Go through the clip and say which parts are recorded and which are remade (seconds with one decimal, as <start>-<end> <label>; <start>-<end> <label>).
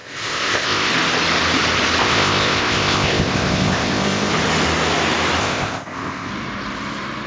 0.0-0.9 remade; 0.9-2.0 recorded; 2.0-4.3 remade; 4.3-5.4 recorded; 5.4-6.3 remade; 6.3-7.3 recorded